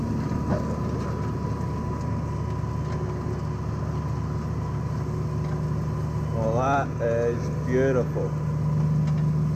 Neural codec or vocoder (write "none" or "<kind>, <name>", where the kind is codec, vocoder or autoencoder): none